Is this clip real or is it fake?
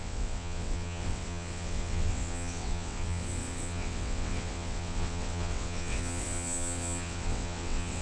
fake